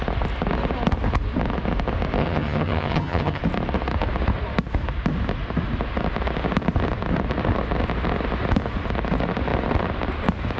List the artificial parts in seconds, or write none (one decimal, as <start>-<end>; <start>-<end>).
2.2-3.4

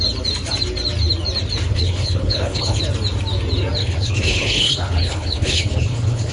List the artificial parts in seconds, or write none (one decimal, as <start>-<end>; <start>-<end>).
1.7-2.8; 3.8-6.3

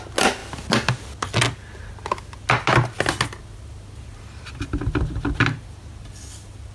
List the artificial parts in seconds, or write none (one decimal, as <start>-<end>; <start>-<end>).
none

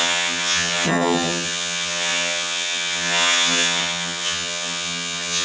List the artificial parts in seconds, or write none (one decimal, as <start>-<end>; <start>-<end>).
0.0-5.4

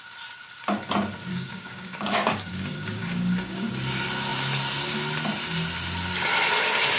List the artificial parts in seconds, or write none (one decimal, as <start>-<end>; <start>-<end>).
1.3-3.7

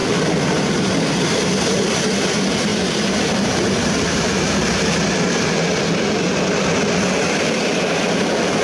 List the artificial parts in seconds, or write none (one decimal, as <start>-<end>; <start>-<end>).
0.0-1.9; 2.7-4.4

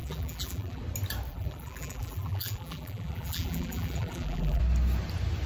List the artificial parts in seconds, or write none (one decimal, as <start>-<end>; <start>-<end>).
0.0-0.8; 1.3-4.6